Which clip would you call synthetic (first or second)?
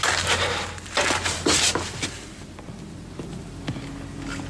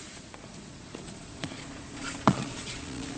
second